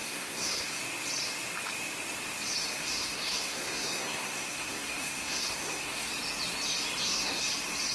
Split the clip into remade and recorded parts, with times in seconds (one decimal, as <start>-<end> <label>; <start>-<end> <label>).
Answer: 0.0-0.8 remade; 0.8-2.6 recorded; 2.6-6.1 remade; 6.1-7.0 recorded; 7.0-7.5 remade; 7.5-7.9 recorded